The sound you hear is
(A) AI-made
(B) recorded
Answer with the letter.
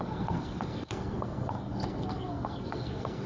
A